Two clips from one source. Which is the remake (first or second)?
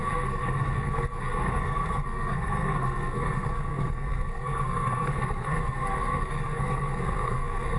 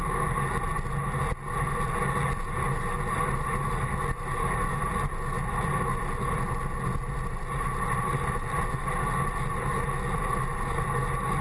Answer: first